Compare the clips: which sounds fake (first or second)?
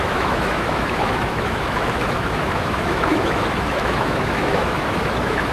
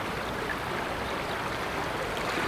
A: first